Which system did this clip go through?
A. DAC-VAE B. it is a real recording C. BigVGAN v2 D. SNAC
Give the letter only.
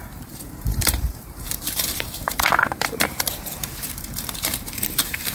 C